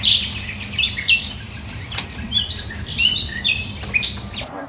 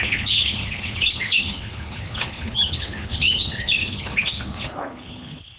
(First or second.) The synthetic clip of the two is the second